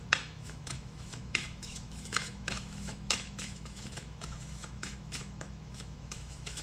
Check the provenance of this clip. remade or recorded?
remade